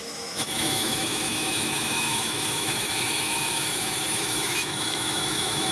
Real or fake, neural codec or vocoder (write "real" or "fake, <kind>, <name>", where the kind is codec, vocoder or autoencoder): fake, autoencoder, DAC-VAE